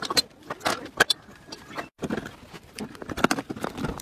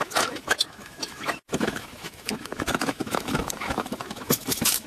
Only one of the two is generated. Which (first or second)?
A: second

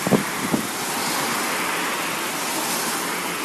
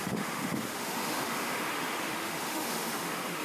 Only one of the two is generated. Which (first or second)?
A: second